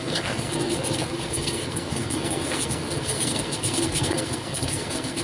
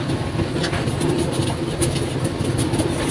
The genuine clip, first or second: second